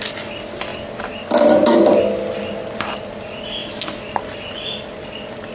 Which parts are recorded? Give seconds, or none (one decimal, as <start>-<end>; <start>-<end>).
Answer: 0.0-5.5